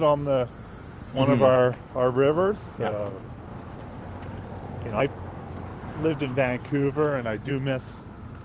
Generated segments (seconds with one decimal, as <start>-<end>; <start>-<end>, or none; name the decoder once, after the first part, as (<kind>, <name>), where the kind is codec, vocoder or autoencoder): 1.1-3.1 (vocoder, BigVGAN v2); 5.7-7.5